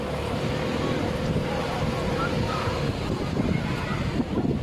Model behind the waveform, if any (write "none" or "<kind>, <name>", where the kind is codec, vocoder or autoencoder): none